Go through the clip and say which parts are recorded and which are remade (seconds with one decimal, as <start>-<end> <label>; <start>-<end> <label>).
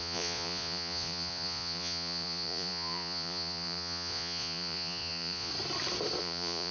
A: 0.0-5.5 remade; 5.5-6.2 recorded; 6.2-6.7 remade